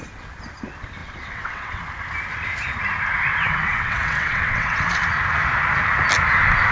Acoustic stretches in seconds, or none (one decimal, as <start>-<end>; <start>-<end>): 0.0-1.0; 1.8-3.3; 4.8-6.7